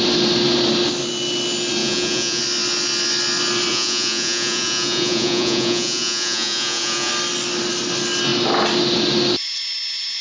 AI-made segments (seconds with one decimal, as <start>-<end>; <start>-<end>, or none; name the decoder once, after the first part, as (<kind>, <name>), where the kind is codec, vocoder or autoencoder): 1.8-2.4 (vocoder, Vocos); 3.7-7.1